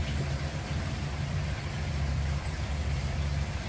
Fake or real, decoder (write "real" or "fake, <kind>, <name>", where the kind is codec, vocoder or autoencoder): fake, vocoder, BigVGAN v2